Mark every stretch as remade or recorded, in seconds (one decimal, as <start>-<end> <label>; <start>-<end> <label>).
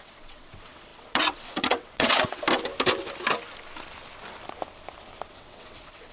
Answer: 0.0-2.4 remade; 2.4-5.3 recorded; 5.3-6.1 remade